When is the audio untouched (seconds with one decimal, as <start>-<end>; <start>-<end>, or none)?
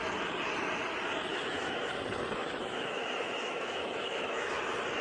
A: 0.0-1.3; 1.9-2.4; 4.6-5.0